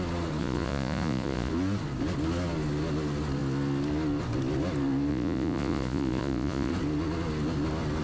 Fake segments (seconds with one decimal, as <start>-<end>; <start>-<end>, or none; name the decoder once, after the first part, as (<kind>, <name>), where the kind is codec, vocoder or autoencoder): 0.4-1.5 (vocoder, Vocos); 5.1-6.7